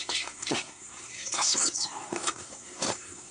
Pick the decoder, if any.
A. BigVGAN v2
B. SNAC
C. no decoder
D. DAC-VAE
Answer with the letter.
B